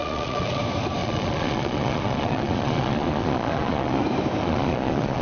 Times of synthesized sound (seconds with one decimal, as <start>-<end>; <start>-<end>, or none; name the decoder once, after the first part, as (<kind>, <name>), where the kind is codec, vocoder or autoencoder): 0.0-0.6 (vocoder, Vocos); 1.0-4.0; 4.4-5.2